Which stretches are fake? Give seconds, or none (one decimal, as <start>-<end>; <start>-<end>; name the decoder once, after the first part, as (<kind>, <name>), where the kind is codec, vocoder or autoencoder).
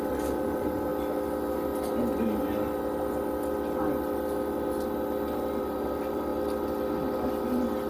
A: 0.0-0.9 (vocoder, BigVGAN v2); 5.6-6.3